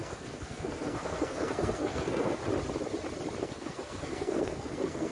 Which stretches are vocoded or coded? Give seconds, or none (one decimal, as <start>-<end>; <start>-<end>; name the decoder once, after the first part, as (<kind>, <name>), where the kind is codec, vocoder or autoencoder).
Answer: 0.0-2.4 (codec, SNAC); 3.4-5.1

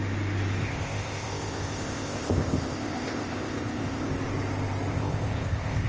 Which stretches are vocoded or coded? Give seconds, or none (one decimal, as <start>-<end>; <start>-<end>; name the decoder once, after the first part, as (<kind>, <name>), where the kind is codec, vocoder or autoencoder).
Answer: 0.6-4.1 (codec, ZipCodec); 4.9-5.9

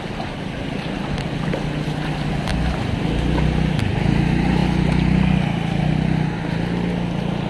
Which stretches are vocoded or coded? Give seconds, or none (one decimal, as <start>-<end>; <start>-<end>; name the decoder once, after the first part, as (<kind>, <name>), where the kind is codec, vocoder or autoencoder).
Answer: none

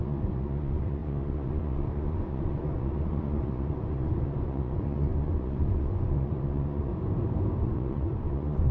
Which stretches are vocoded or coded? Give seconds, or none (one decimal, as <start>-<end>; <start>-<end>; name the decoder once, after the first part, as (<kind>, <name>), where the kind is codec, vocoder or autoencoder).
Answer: 0.0-6.9 (vocoder, Vocos); 7.6-8.7